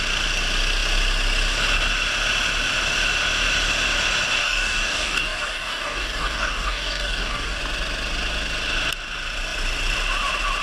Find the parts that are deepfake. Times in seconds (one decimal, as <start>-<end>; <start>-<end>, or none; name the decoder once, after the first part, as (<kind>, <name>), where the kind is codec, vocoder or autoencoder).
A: 4.4-7.6 (codec, DAC)

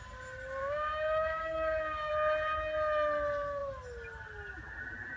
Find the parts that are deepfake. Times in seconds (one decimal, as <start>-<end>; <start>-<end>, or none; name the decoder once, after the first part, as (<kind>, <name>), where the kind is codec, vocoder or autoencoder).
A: 0.6-2.1 (codec, DAC)